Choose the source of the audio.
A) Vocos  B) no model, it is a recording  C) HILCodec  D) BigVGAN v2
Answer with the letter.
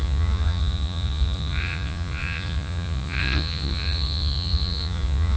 A